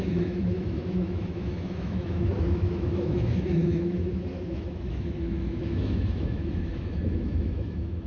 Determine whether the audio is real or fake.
fake